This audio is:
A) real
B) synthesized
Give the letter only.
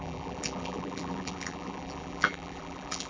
B